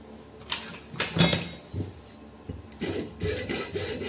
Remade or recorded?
recorded